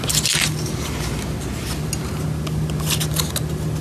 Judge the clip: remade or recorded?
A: recorded